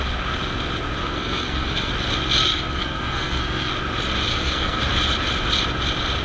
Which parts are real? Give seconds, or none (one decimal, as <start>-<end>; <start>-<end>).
0.0-1.0; 1.9-2.4; 3.7-4.3; 4.8-6.2